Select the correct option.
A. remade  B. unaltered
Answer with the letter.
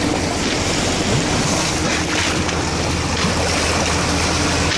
B